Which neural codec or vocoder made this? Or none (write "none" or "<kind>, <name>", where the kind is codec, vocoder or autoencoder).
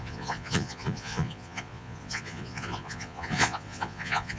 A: vocoder, Vocos